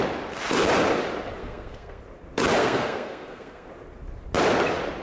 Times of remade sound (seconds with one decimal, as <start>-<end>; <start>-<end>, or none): 1.4-2.0; 2.6-3.7